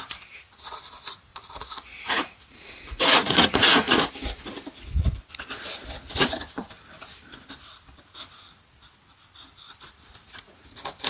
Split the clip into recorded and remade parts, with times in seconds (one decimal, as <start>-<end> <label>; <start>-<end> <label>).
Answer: 0.0-1.3 recorded; 1.3-4.1 remade; 4.1-6.1 recorded; 6.1-6.7 remade; 6.7-11.1 recorded